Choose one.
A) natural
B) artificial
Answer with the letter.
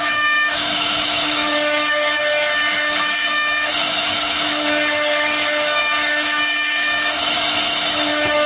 B